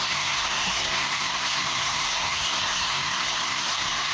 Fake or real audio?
fake